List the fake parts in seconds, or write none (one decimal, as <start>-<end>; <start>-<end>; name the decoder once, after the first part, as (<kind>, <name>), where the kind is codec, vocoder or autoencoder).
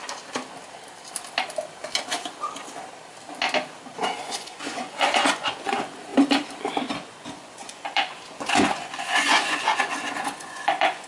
4.2-6.1 (vocoder, Vocos); 6.8-11.1